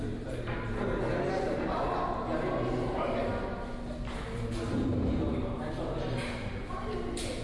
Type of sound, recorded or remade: recorded